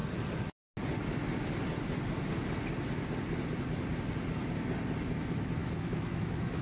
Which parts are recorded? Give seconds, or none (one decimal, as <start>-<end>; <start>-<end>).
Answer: 0.0-5.6